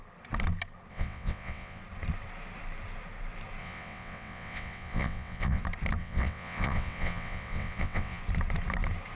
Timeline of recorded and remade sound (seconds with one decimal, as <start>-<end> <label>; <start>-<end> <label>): 0.0-0.9 recorded; 0.9-1.8 remade; 1.8-3.6 recorded; 3.6-5.6 remade; 5.6-6.0 recorded; 6.0-8.2 remade; 8.2-9.1 recorded